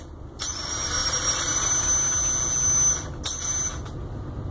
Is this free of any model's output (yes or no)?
yes